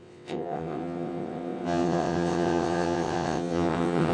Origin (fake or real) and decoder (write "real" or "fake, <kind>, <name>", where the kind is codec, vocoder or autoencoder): fake, vocoder, WaveNeXt